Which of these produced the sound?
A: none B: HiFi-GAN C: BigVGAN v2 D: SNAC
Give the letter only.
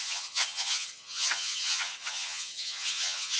B